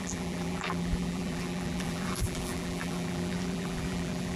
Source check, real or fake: fake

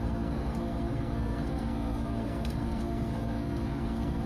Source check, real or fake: fake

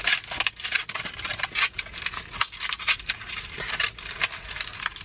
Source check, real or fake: real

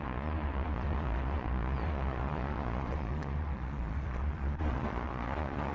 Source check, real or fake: fake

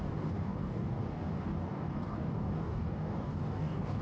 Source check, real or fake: fake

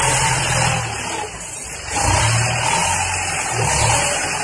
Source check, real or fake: real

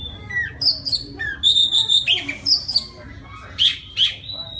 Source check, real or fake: real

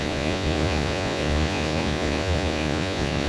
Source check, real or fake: fake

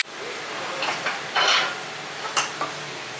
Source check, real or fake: real